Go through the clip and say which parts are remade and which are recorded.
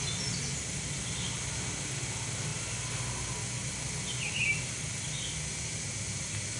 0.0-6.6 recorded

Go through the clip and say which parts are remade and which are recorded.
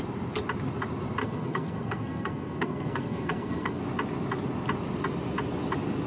0.0-1.2 recorded; 1.2-3.8 remade; 3.8-6.1 recorded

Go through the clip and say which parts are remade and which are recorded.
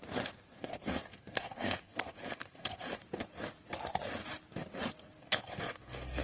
0.0-0.6 recorded; 0.6-2.9 remade; 2.9-5.2 recorded; 5.2-6.2 remade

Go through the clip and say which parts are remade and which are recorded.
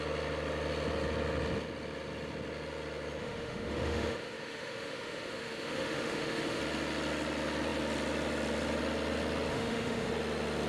0.0-3.2 recorded; 3.2-6.6 remade; 6.6-9.5 recorded; 9.5-10.1 remade; 10.1-10.7 recorded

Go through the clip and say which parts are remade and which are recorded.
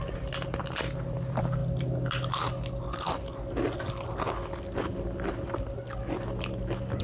0.0-7.0 recorded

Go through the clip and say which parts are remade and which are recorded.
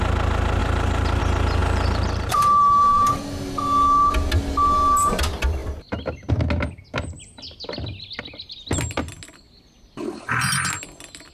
0.0-0.6 recorded; 0.6-1.2 remade; 1.2-1.6 recorded; 1.6-3.2 remade; 3.2-11.3 recorded